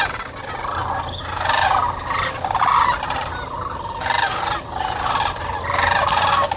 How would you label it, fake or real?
real